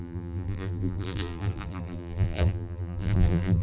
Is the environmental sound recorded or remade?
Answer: remade